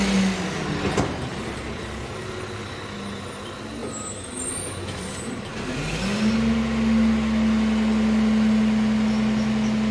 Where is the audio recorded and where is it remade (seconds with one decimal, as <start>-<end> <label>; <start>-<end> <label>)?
0.0-1.3 recorded; 1.3-2.3 remade; 2.3-3.8 recorded; 3.8-5.2 remade; 5.2-9.9 recorded